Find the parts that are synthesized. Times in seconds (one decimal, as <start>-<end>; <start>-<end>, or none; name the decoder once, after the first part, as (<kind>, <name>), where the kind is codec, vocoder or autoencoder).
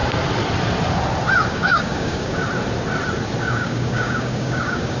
1.5-2.4 (codec, DAC); 3.4-5.0